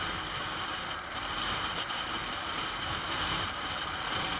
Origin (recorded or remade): recorded